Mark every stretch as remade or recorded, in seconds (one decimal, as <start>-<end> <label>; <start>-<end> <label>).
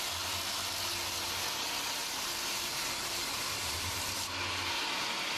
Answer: 0.0-2.0 recorded; 2.0-4.3 remade; 4.3-5.4 recorded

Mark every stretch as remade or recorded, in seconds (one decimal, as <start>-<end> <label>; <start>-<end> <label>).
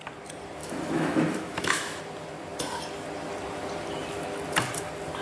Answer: 0.0-0.6 recorded; 0.6-2.0 remade; 2.0-5.2 recorded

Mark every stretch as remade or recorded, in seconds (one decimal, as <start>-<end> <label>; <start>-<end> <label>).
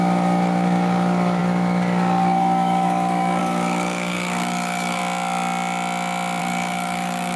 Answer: 0.0-5.0 remade; 5.0-6.4 recorded; 6.4-7.4 remade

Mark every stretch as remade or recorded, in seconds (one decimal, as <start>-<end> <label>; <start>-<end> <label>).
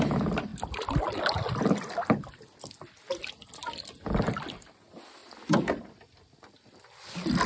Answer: 0.0-7.5 recorded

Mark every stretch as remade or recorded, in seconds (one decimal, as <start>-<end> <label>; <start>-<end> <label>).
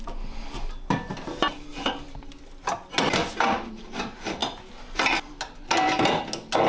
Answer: 0.0-6.7 recorded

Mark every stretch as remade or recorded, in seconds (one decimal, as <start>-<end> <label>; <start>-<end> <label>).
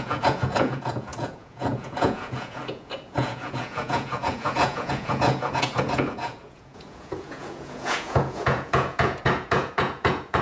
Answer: 0.0-10.4 remade